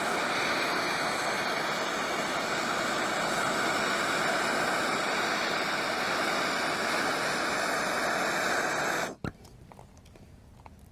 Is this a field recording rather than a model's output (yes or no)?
yes